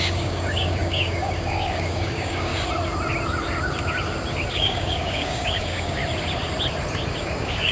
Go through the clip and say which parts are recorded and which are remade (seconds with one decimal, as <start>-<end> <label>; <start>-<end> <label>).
0.0-2.5 remade; 2.5-4.5 recorded; 4.5-6.0 remade; 6.0-7.2 recorded; 7.2-7.7 remade

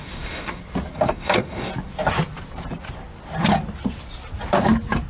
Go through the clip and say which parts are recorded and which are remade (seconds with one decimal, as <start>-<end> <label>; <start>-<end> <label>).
0.0-0.6 remade; 0.6-1.1 recorded; 1.1-1.7 remade; 1.7-5.1 recorded